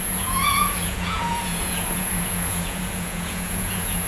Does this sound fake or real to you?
fake